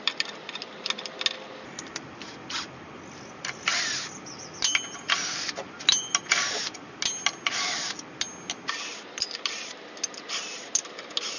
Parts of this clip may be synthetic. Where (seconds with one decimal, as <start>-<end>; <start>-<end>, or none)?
none

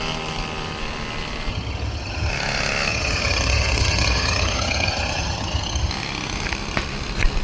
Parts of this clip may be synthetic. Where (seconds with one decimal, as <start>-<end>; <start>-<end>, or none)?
1.5-2.3; 2.9-5.9